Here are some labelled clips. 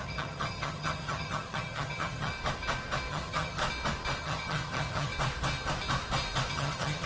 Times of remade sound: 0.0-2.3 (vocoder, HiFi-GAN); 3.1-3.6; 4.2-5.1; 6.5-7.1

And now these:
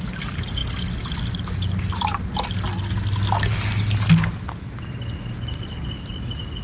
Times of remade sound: none

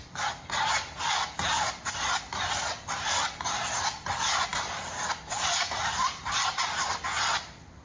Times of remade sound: none

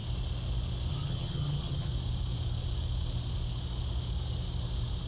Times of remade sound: 0.9-1.9 (vocoder, HiFi-GAN)

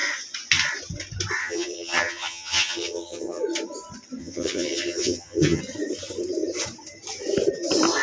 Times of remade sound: 1.4-3.4 (vocoder, HiFi-GAN); 4.2-5.6

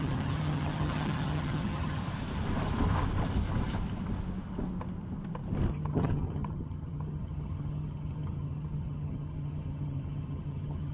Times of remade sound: 0.0-2.0 (vocoder, HiFi-GAN); 5.7-10.9